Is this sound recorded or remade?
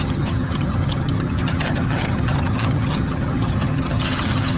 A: remade